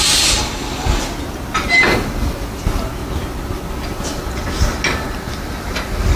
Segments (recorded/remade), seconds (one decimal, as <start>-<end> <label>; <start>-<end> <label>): 0.0-6.2 recorded

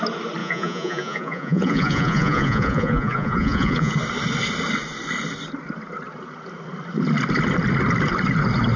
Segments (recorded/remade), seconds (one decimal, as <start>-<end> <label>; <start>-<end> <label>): 0.0-0.4 recorded; 0.4-3.9 remade; 3.9-8.8 recorded

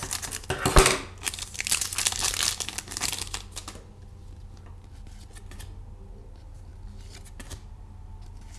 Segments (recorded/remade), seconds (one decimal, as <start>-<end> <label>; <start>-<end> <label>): 0.0-8.6 recorded

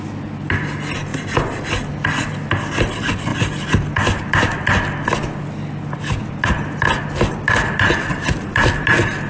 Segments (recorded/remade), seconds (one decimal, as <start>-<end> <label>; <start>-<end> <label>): 0.0-9.3 recorded

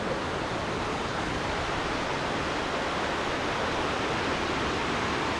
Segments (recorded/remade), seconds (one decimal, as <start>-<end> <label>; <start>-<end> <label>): 0.0-0.9 recorded; 0.9-1.4 remade; 1.4-5.4 recorded

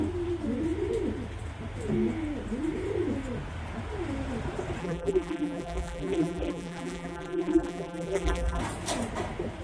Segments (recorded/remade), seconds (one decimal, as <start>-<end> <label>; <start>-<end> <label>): 0.0-4.8 recorded; 4.8-8.6 remade; 8.6-9.6 recorded